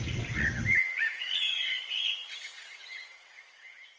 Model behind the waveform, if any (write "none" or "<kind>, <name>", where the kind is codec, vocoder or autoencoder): vocoder, WaveNeXt